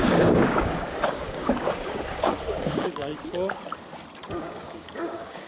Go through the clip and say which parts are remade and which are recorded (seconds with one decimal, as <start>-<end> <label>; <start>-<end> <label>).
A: 0.0-3.1 remade; 3.1-4.3 recorded; 4.3-5.5 remade